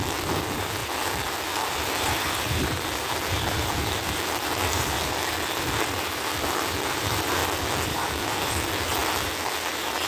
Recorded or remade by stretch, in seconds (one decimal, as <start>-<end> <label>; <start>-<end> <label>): 0.0-7.4 remade; 7.4-7.9 recorded; 7.9-9.0 remade; 9.0-10.1 recorded